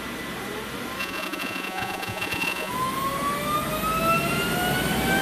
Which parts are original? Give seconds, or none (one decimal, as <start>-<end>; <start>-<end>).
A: 0.0-1.0; 2.7-5.2